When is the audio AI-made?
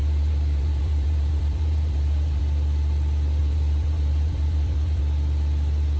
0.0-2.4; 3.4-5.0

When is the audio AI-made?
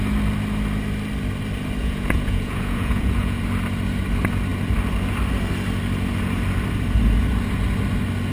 1.8-3.4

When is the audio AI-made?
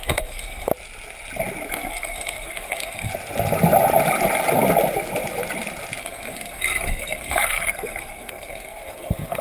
0.0-0.7; 1.7-3.1; 6.0-9.4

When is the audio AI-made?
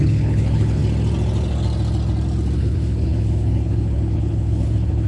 0.0-0.8; 2.6-5.1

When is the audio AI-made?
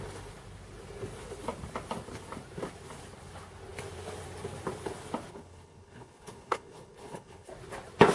5.3-7.5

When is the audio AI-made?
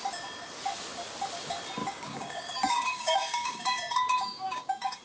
1.8-5.0